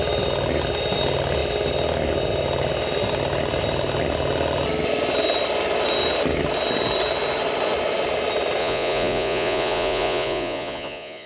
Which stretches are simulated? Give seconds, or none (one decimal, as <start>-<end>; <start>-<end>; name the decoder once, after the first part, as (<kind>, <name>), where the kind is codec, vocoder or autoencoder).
8.6-11.3 (vocoder, Vocos)